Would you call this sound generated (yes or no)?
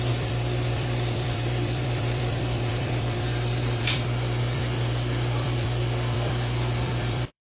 yes